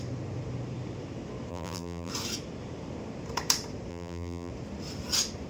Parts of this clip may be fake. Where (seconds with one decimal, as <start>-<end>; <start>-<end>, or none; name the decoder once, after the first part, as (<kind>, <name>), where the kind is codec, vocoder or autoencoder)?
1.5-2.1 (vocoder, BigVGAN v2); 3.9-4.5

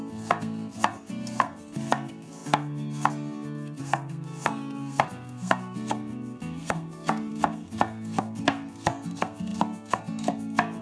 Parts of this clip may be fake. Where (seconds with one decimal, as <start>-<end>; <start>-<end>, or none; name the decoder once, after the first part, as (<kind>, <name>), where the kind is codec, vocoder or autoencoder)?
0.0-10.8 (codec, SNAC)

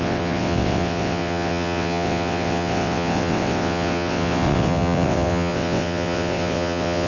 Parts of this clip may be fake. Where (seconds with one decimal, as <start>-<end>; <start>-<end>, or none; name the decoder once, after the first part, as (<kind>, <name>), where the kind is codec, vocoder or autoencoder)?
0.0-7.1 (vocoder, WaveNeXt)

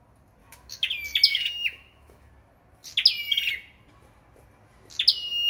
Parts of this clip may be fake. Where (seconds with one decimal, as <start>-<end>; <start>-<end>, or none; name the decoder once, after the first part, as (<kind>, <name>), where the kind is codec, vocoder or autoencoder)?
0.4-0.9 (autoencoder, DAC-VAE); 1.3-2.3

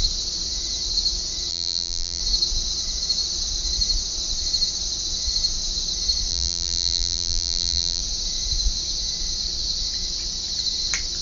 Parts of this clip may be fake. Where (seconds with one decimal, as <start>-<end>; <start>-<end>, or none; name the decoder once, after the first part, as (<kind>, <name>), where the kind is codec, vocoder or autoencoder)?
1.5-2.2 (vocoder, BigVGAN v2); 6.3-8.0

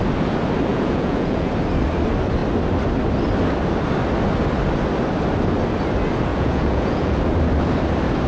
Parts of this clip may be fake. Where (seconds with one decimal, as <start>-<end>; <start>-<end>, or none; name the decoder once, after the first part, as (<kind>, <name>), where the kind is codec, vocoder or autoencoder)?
0.7-1.5 (vocoder, Vocos); 6.3-7.2

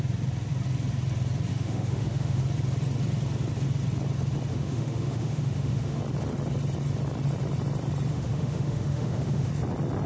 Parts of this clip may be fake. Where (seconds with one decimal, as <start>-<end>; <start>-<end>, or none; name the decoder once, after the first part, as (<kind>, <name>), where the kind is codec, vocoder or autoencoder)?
1.5-2.4 (autoencoder, DAC-VAE); 4.5-6.0; 8.1-9.5